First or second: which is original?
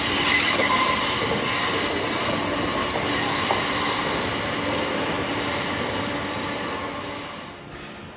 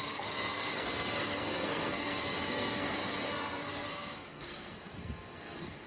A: first